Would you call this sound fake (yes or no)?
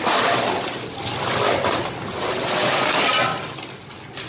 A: no